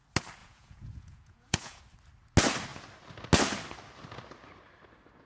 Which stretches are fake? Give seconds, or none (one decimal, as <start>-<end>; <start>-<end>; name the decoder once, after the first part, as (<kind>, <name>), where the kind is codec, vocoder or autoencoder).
0.4-1.8 (vocoder, Vocos)